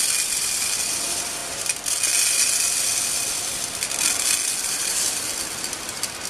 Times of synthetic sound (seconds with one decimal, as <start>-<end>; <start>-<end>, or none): none